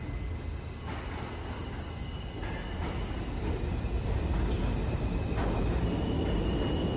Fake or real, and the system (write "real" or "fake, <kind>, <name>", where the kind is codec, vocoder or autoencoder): real